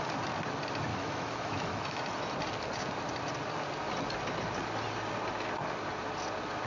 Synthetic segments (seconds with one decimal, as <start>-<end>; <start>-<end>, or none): 0.9-2.0